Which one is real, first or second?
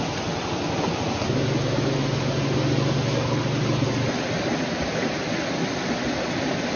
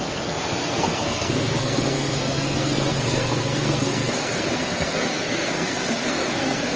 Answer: first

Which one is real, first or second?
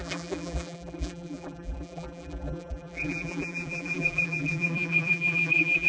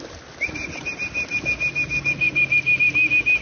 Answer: second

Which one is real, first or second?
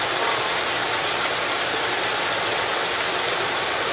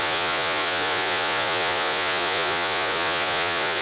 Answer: first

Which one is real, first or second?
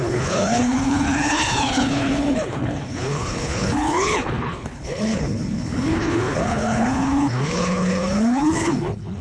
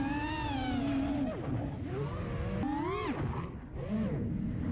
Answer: second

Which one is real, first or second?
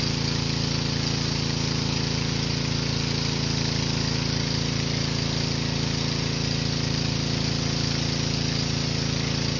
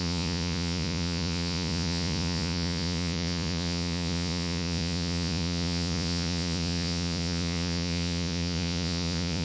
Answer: first